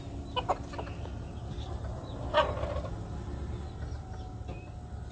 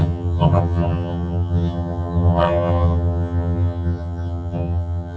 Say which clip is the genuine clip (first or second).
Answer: first